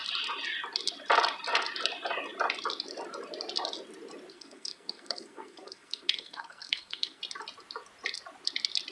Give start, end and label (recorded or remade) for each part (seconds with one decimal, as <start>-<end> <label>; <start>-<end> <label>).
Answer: 0.0-4.3 recorded; 4.3-7.2 remade; 7.2-8.9 recorded